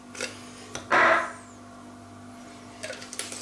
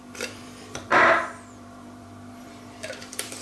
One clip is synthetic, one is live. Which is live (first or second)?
first